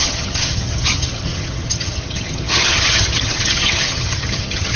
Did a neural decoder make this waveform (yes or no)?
yes